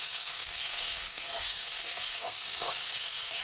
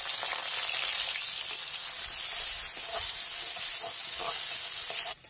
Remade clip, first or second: first